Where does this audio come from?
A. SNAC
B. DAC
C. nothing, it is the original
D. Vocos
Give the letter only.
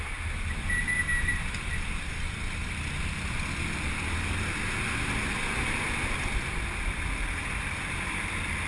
C